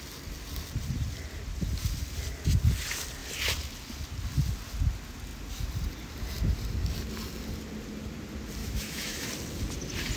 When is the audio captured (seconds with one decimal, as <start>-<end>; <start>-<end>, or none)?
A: 0.0-8.6; 9.3-10.2